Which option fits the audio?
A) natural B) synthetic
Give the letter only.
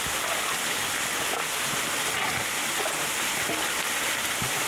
A